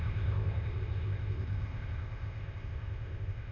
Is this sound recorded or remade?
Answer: remade